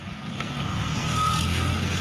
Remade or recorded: remade